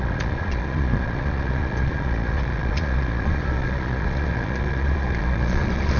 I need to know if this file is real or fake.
fake